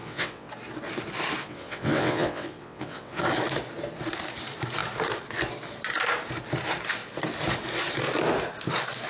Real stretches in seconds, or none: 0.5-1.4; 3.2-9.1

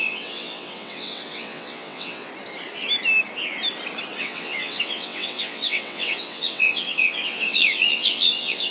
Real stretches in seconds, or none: 2.3-4.2

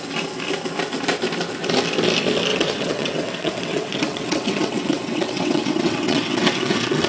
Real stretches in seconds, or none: 0.0-2.5

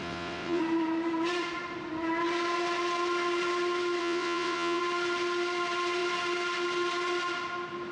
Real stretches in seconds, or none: 0.6-4.0; 4.8-7.9

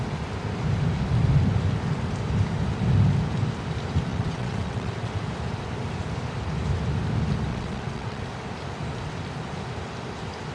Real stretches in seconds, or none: 0.0-4.1; 5.1-7.5; 8.2-10.5

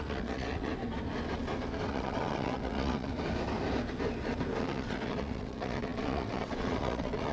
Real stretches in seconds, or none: 0.7-1.9; 3.1-4.6

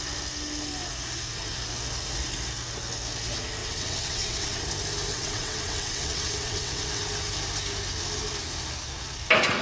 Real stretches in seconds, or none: 0.0-3.6; 4.6-5.1; 7.0-9.6

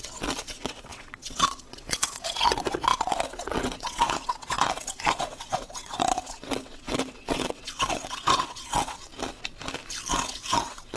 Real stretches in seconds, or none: 9.1-10.1